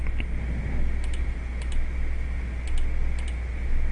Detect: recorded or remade recorded